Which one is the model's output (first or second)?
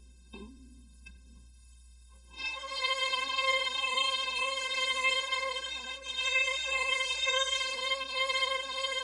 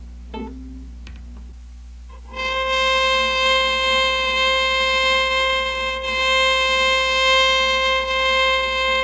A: first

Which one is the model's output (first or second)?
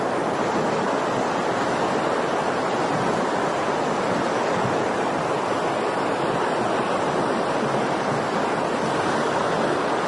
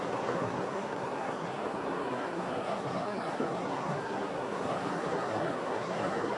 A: second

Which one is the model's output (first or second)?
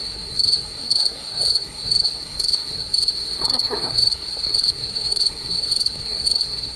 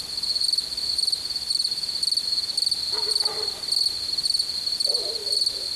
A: first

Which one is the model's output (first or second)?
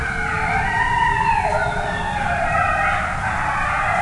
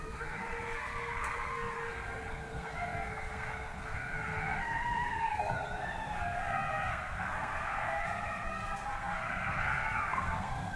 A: second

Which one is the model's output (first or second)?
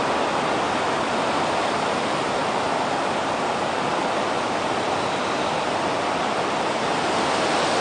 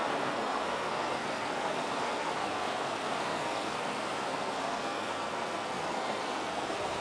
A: second